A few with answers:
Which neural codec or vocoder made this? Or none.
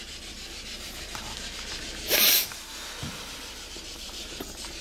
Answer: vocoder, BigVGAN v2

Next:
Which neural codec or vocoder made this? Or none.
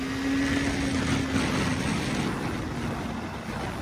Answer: none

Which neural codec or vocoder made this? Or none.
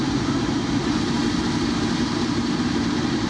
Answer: vocoder, BigVGAN v2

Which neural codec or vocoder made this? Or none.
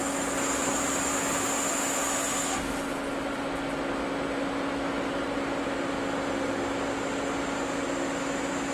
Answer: none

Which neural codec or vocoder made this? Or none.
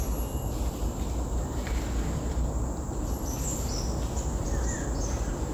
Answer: none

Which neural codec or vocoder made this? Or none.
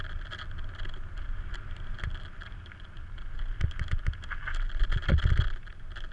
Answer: none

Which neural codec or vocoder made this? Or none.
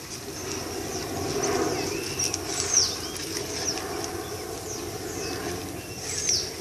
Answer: none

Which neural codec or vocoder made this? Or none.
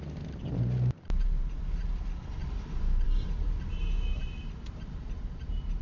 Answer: vocoder, BigVGAN v2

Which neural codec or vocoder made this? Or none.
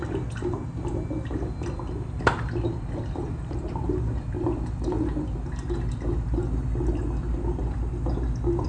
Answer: none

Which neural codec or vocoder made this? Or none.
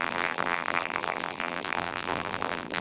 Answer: vocoder, BigVGAN v2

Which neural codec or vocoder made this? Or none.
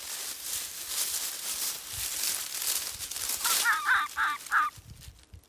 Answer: none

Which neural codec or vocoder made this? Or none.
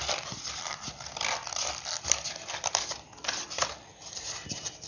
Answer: vocoder, BigVGAN v2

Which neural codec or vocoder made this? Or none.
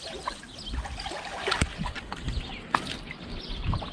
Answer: none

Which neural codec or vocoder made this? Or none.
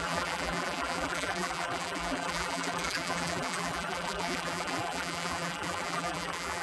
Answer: vocoder, BigVGAN v2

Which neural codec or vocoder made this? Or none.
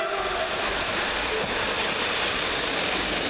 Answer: none